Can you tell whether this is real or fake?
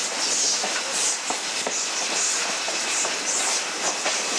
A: real